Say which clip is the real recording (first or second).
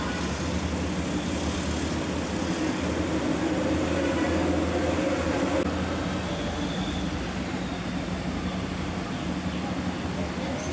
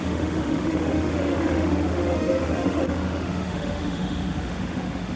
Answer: first